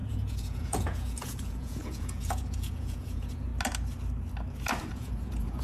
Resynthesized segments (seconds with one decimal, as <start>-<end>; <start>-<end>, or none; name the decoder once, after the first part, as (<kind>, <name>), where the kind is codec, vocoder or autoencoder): 0.0-3.5 (vocoder, Vocos); 4.9-5.6